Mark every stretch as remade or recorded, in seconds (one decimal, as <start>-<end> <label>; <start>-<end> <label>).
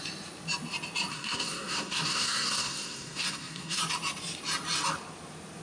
0.0-1.1 recorded; 1.1-3.8 remade; 3.8-5.6 recorded